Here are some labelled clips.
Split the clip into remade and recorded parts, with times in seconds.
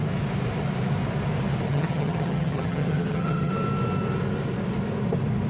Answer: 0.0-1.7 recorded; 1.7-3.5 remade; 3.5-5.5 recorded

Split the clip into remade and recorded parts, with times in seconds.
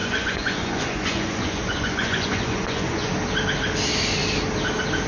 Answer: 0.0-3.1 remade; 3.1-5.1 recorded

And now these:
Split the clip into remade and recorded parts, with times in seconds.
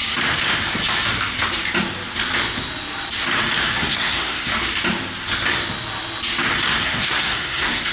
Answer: 0.0-3.8 recorded; 3.8-4.5 remade; 4.5-6.8 recorded; 6.8-7.9 remade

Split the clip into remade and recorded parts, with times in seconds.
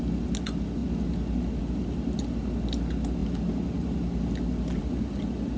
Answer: 0.0-5.6 recorded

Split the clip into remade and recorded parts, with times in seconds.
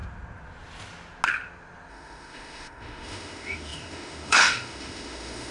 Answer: 0.0-1.9 recorded; 1.9-5.5 remade